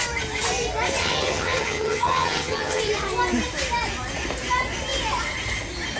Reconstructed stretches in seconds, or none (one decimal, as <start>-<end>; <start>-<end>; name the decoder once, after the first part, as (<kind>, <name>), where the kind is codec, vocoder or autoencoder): 1.0-2.8 (vocoder, HiFi-GAN)